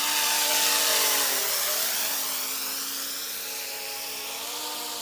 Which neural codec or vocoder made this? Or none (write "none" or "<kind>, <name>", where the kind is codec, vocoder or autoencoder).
none